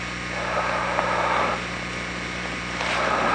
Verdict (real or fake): real